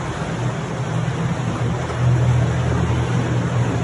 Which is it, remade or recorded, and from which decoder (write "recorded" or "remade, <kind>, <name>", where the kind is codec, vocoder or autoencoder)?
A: recorded